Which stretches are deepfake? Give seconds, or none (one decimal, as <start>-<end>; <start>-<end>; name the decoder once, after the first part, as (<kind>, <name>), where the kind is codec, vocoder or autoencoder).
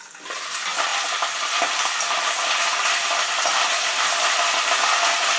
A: none